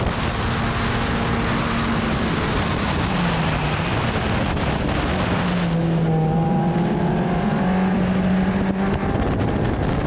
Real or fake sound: real